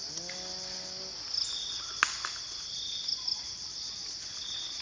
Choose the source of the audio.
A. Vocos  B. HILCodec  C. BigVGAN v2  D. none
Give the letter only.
D